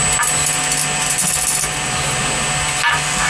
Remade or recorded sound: recorded